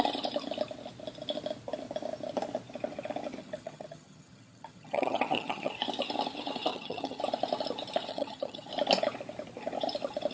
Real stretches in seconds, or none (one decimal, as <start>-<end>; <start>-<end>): 0.0-3.4; 5.7-6.7; 7.2-8.1; 8.7-10.3

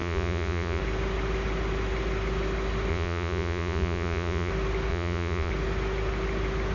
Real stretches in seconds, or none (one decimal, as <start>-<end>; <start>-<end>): 0.8-2.9; 4.5-4.9; 5.5-6.7

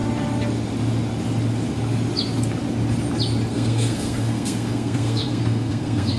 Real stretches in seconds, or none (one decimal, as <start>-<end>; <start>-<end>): 0.0-3.5

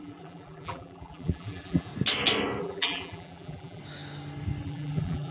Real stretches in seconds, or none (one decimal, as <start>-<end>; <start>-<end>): 1.9-2.6; 3.8-4.6